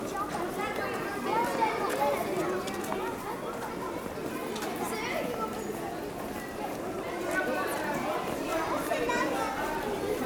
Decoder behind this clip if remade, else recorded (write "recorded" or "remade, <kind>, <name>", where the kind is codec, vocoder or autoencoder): recorded